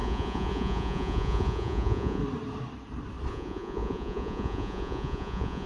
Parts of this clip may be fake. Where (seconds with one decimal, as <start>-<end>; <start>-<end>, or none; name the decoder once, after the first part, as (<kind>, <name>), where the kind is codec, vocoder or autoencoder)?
0.0-2.2 (vocoder, Vocos); 3.3-5.7